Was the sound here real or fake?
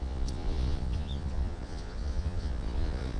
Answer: fake